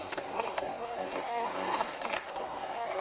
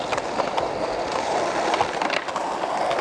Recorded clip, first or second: second